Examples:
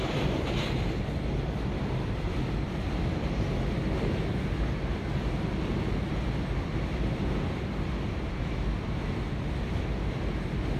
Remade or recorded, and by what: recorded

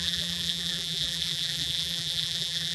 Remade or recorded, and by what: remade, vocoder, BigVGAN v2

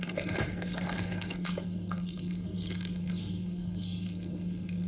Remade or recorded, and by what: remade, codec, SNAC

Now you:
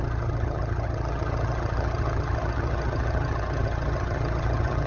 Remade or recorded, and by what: remade, vocoder, HiFi-GAN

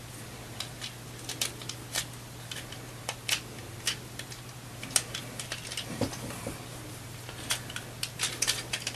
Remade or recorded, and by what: recorded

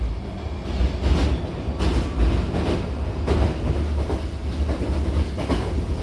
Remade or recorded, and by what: recorded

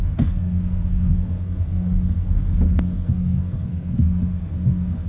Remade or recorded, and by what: remade, codec, SNAC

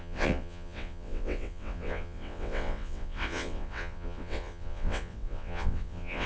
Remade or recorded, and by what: remade, vocoder, WaveNeXt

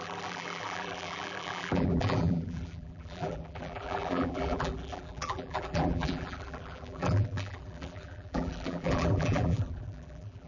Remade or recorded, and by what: remade, vocoder, BigVGAN v2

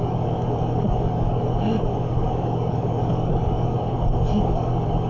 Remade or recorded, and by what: remade, codec, DAC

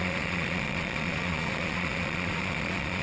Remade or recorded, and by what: remade, vocoder, Vocos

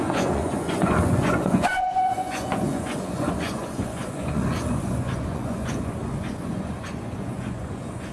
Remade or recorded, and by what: remade, vocoder, Vocos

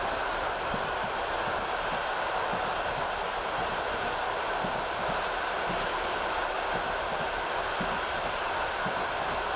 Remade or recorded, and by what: recorded